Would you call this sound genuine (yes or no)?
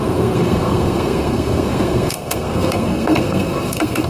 no